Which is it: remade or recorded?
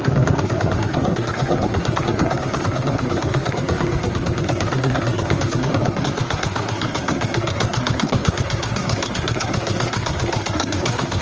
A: remade